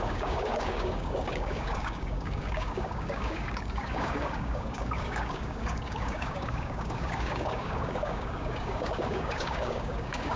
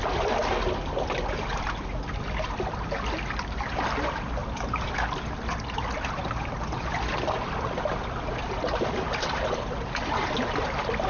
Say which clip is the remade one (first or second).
first